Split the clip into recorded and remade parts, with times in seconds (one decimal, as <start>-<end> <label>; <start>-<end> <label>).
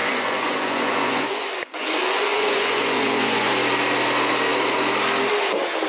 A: 0.0-3.5 remade; 3.5-5.9 recorded